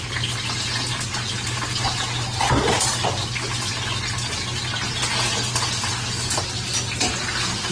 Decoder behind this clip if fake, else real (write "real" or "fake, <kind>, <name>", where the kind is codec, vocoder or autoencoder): real